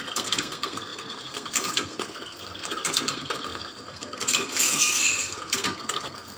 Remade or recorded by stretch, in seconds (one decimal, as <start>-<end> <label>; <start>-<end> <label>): 0.0-6.4 remade